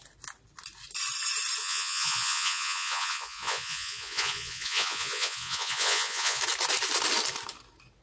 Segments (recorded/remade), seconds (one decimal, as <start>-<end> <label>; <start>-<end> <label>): 0.0-1.6 recorded; 1.6-6.4 remade; 6.4-8.0 recorded